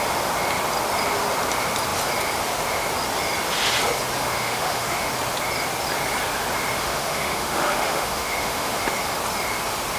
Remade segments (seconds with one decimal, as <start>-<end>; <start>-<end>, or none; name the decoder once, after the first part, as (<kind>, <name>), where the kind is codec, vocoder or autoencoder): 4.2-5.1 (autoencoder, DAC-VAE); 6.8-8.8